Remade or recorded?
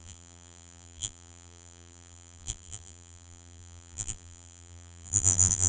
remade